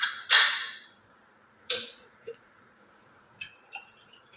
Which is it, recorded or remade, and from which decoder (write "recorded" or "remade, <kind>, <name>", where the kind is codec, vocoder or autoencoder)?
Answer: remade, vocoder, Vocos